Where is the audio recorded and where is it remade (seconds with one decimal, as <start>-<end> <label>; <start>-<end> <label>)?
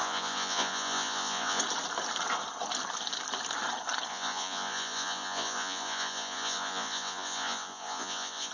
0.0-1.6 remade; 1.6-4.1 recorded; 4.1-8.5 remade